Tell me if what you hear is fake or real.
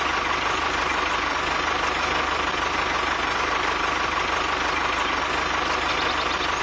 real